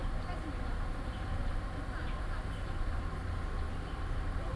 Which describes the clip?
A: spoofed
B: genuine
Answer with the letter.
A